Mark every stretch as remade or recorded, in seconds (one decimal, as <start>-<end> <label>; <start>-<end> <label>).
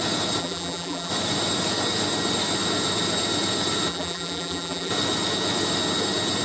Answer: 0.0-0.4 recorded; 0.4-1.1 remade; 1.1-3.9 recorded; 3.9-4.9 remade; 4.9-6.4 recorded